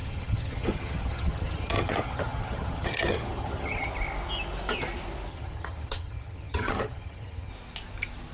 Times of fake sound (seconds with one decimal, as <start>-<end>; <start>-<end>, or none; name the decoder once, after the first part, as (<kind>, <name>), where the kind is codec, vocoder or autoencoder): 0.0-3.9 (vocoder, HiFi-GAN); 5.3-7.5